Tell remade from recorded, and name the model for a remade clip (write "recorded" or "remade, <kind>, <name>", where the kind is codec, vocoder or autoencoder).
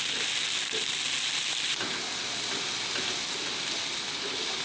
recorded